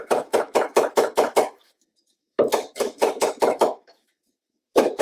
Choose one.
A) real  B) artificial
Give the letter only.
B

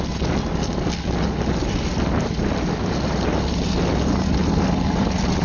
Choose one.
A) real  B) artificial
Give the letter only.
A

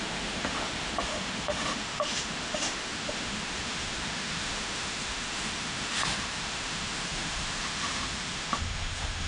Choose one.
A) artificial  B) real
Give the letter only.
A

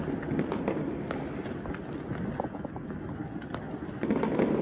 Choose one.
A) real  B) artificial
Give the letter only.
A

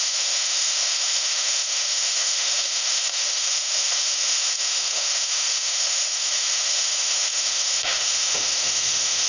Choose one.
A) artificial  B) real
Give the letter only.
A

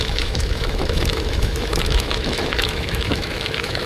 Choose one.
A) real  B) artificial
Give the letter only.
B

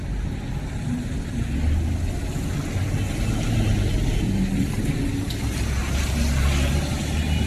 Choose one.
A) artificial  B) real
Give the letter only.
B